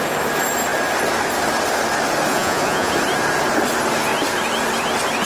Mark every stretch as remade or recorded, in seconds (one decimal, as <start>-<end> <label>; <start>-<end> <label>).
0.0-2.3 recorded; 2.3-2.9 remade; 2.9-5.3 recorded